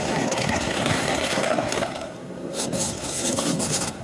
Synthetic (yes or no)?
yes